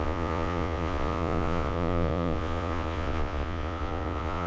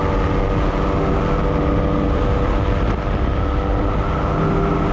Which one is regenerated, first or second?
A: first